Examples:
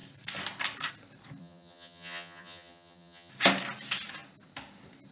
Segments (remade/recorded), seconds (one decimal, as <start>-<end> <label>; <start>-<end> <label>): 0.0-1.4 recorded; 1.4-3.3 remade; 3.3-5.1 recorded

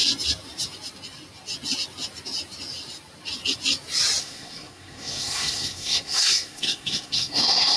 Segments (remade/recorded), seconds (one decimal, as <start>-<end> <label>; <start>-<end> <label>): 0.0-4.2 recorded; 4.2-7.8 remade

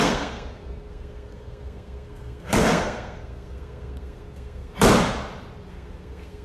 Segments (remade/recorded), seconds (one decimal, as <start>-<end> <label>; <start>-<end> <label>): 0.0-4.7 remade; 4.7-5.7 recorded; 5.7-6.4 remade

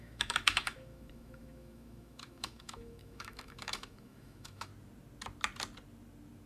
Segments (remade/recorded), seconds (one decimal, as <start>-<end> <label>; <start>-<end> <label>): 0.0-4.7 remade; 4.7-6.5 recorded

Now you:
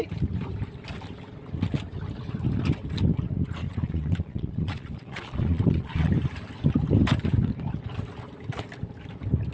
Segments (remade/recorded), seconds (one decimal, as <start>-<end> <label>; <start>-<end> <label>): 0.0-3.6 recorded; 3.6-6.1 remade; 6.1-9.5 recorded

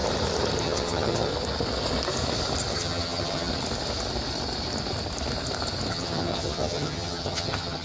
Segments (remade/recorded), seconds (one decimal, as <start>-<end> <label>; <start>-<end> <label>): 0.0-0.6 recorded; 0.6-1.3 remade; 1.3-2.7 recorded; 2.7-3.5 remade; 3.5-5.9 recorded; 5.9-7.8 remade